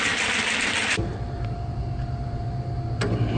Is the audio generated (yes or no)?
no